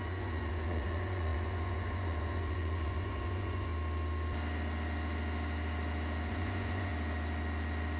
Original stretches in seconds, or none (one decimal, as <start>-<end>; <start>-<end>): 3.7-6.3; 6.9-8.0